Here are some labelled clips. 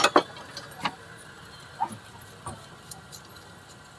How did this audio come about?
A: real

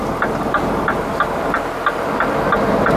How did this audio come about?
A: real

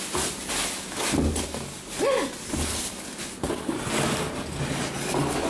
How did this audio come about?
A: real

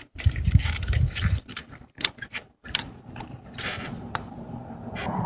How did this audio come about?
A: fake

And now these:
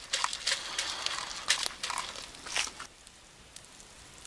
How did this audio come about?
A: real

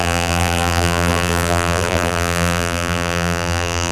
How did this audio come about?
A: fake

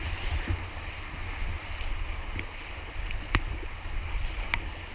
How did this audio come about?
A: real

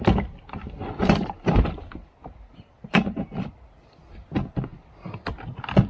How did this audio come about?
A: real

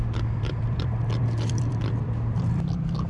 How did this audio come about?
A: fake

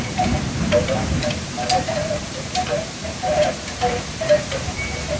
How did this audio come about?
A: fake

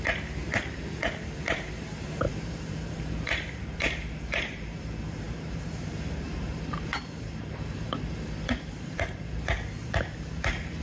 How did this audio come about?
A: fake